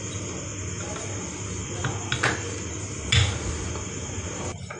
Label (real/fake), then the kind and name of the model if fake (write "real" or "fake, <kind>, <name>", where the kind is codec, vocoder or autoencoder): real